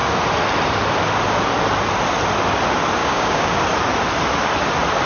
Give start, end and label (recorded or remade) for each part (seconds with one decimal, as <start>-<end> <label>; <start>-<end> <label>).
0.0-3.0 recorded; 3.0-3.6 remade; 3.6-5.1 recorded